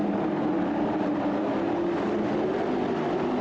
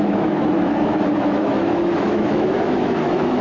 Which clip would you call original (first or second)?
first